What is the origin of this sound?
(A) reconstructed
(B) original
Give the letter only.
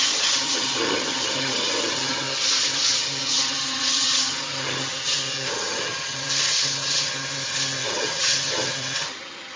A